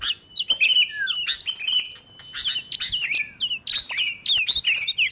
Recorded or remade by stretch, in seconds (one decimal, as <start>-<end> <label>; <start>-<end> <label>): 0.0-5.1 recorded